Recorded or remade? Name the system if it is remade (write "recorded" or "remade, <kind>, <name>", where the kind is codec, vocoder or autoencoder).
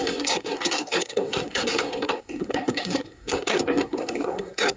remade, codec, SNAC